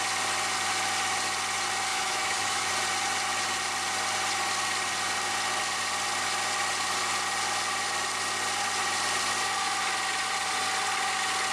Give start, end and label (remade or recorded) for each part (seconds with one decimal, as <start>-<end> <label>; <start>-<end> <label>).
0.0-1.9 recorded; 1.9-2.7 remade; 2.7-11.5 recorded